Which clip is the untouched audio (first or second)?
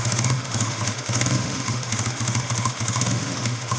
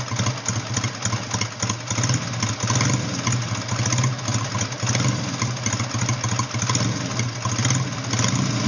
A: second